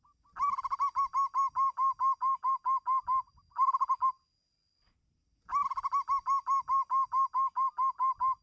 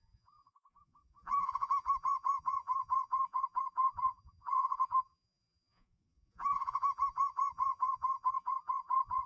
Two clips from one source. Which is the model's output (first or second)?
second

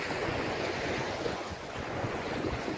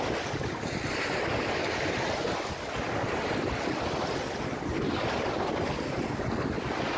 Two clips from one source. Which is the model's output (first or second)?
first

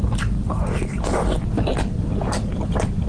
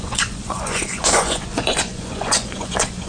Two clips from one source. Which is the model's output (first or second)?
second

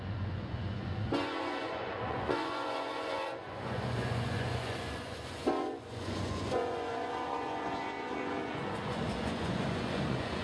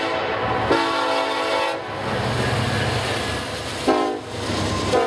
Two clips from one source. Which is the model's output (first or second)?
first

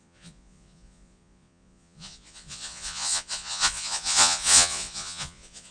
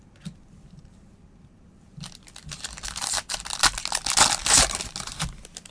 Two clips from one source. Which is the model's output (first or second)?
first